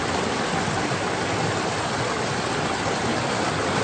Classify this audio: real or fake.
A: real